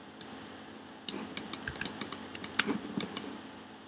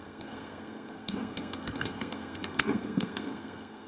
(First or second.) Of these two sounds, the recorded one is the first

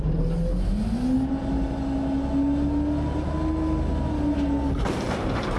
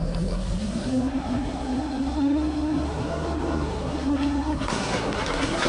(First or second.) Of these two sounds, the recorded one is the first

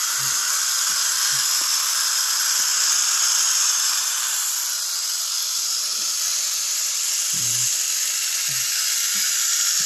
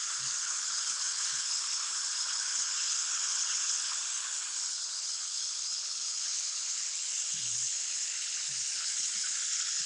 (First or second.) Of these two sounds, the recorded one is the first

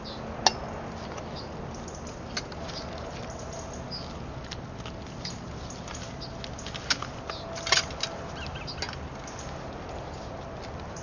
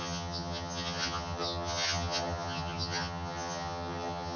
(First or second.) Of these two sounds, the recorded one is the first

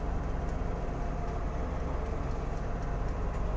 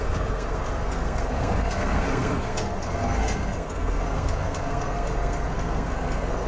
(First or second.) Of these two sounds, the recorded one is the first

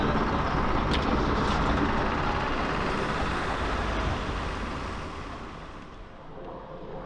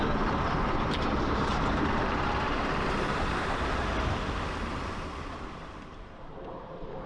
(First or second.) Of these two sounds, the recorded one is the first